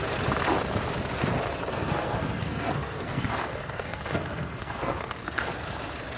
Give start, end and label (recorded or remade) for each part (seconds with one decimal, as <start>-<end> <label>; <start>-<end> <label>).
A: 0.0-1.7 recorded; 1.7-5.4 remade; 5.4-6.2 recorded